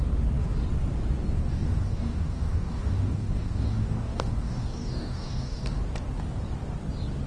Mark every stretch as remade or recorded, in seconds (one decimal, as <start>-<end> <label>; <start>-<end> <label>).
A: 0.0-1.4 recorded; 1.4-5.8 remade; 5.8-7.3 recorded